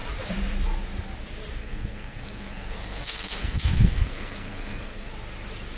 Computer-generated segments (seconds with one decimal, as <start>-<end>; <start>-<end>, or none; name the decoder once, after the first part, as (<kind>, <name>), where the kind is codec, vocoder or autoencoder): 1.6-5.1 (codec, SNAC)